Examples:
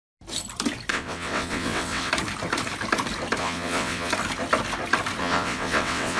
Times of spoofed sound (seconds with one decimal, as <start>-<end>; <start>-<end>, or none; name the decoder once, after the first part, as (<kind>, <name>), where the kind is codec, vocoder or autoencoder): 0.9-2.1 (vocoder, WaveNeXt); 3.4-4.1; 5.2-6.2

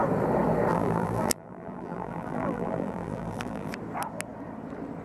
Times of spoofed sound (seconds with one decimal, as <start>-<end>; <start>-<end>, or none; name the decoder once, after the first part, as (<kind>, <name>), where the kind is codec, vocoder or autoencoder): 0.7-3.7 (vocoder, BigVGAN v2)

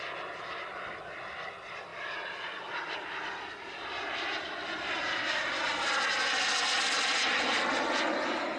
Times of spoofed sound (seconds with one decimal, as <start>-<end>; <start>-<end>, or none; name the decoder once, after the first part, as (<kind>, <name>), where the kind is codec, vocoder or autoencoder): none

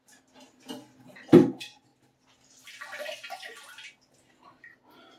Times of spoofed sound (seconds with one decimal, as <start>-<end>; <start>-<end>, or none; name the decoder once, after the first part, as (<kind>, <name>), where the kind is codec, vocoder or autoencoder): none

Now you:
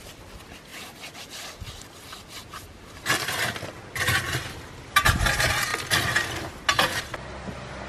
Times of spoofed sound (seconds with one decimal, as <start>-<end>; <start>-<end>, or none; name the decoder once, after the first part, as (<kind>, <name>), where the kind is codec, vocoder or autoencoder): none